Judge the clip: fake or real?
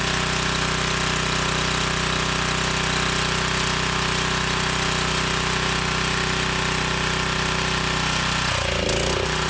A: real